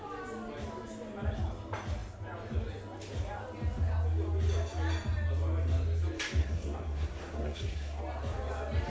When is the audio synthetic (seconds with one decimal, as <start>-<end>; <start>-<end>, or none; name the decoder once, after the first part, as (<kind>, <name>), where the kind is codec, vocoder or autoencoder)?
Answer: 6.4-8.0 (codec, SNAC)